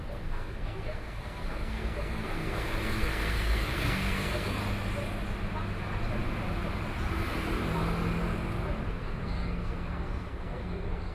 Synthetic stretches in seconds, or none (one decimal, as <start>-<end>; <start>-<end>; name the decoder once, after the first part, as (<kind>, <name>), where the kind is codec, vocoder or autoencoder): 0.0-4.6 (codec, SNAC); 8.9-11.1